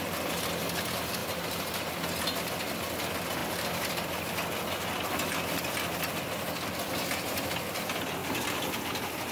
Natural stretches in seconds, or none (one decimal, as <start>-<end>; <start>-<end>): 0.0-1.2; 1.9-3.4; 4.3-8.2; 8.8-9.3